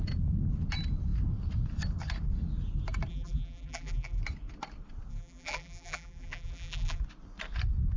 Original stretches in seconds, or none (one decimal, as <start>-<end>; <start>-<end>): 0.0-3.1; 4.2-5.1; 7.0-8.0